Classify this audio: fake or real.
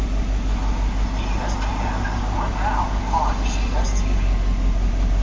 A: real